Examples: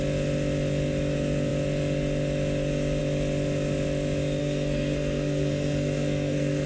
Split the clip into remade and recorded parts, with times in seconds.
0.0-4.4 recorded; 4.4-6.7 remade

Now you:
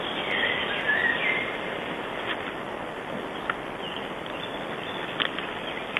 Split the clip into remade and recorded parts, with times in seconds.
0.0-1.0 recorded; 1.0-4.6 remade; 4.6-6.0 recorded